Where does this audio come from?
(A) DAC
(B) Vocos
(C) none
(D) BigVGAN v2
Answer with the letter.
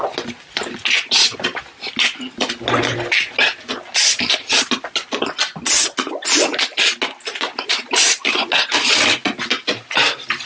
C